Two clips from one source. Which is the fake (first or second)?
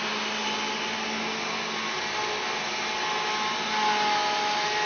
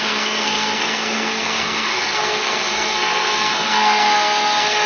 second